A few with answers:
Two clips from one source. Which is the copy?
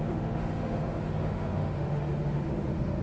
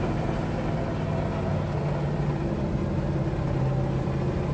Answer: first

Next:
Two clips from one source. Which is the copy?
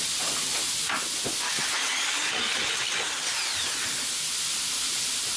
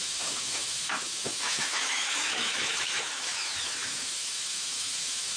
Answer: second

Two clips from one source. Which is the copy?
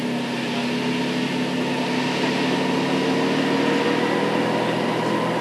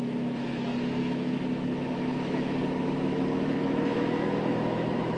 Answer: second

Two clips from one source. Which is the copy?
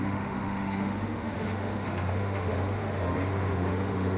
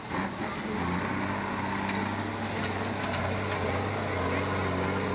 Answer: first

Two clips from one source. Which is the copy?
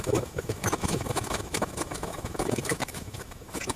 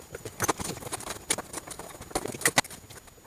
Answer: first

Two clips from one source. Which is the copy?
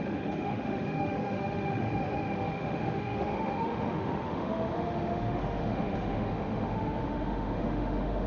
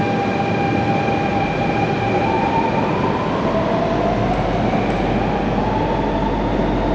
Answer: first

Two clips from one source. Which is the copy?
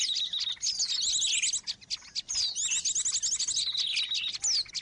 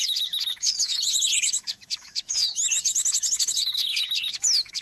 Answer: second